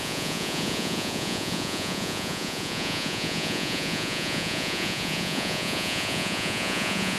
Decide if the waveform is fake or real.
fake